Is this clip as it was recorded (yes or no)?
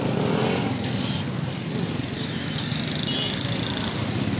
yes